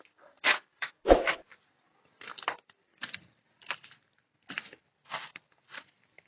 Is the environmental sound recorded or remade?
remade